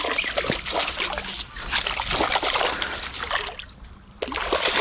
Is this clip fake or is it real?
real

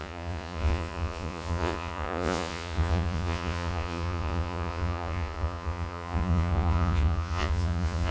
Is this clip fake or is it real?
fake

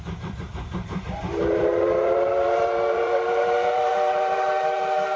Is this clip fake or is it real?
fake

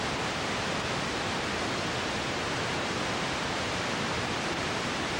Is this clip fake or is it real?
real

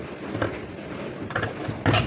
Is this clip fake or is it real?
real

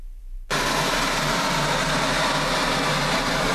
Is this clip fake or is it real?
real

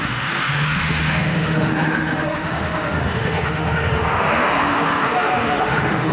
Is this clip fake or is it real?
fake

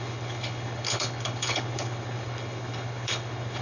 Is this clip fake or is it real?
fake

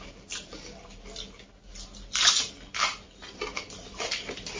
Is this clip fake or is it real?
real